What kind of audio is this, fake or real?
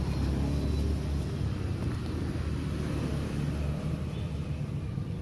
real